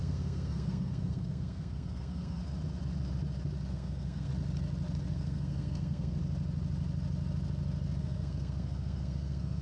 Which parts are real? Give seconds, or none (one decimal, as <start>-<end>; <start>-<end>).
2.4-3.7; 4.3-5.1; 6.2-8.0

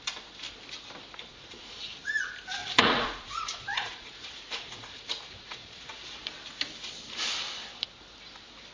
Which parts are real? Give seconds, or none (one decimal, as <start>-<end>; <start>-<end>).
0.0-1.3; 2.2-2.6; 6.3-8.7

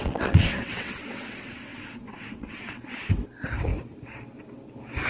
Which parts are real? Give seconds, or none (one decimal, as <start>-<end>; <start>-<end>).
3.1-5.1

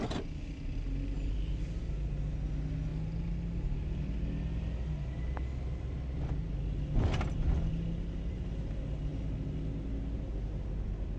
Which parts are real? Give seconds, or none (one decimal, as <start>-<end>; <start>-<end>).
0.0-11.2

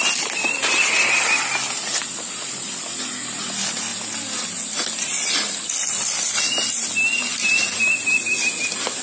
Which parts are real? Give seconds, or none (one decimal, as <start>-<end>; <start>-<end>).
0.0-9.0

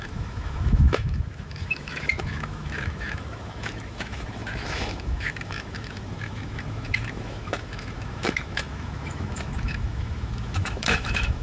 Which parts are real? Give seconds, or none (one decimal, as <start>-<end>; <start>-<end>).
none

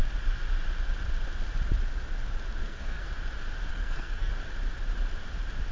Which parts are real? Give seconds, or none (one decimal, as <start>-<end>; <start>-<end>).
0.0-2.6; 3.1-3.7; 4.3-5.7